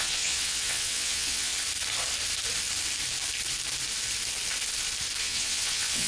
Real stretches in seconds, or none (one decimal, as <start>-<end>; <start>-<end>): 1.5-5.2